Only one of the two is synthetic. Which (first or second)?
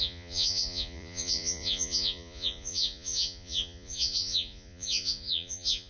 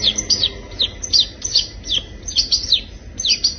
first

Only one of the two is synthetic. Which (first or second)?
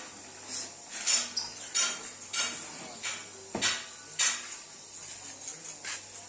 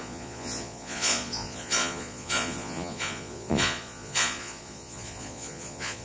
second